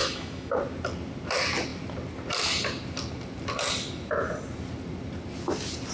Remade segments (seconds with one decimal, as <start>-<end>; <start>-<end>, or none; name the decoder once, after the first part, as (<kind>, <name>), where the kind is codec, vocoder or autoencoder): 0.0-0.5 (autoencoder, DAC-VAE)